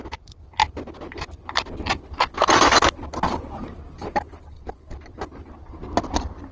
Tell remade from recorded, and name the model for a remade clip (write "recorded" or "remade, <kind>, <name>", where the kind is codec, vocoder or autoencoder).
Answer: recorded